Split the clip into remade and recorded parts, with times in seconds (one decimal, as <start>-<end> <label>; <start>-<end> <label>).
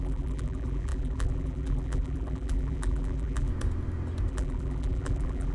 0.0-3.5 remade; 3.5-4.3 recorded; 4.3-5.5 remade